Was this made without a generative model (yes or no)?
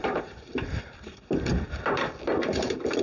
yes